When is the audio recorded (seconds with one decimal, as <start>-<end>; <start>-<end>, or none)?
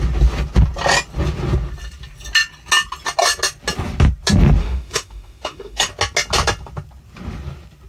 0.0-4.6; 5.9-7.9